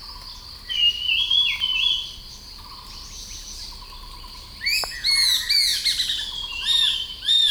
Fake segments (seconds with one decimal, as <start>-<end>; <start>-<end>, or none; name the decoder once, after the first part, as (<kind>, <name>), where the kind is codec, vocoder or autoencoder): none